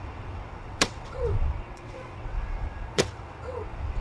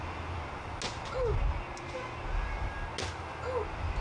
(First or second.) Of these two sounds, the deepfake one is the first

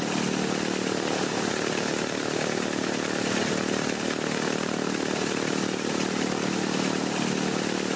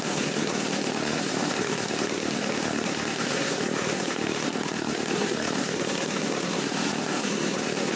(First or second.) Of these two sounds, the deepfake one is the second